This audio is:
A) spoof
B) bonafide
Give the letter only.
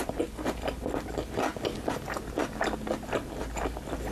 B